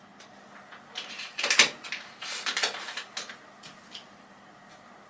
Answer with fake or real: real